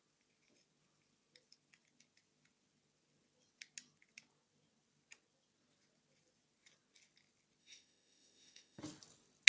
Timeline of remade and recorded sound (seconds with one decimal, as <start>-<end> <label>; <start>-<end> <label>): 0.0-7.6 recorded; 7.6-8.8 remade; 8.8-9.5 recorded